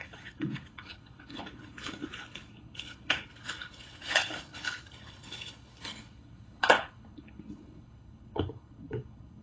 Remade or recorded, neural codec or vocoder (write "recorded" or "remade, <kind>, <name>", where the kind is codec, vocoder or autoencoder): remade, codec, HILCodec